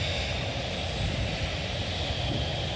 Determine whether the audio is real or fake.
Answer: real